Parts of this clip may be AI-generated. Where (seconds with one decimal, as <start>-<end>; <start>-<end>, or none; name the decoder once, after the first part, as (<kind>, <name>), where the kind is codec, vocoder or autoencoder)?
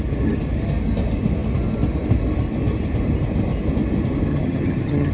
4.3-5.1 (vocoder, HiFi-GAN)